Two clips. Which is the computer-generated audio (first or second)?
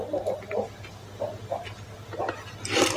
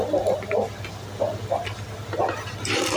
second